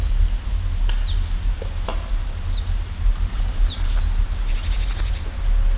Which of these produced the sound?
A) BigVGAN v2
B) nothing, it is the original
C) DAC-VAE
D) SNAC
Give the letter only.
B